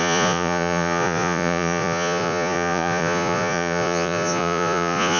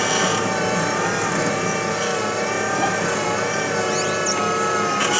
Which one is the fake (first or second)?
first